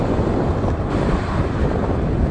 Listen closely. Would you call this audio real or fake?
real